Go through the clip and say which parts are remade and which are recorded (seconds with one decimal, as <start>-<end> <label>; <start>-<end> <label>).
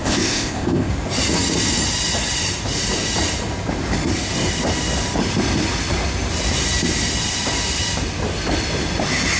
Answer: 0.0-0.9 remade; 0.9-9.4 recorded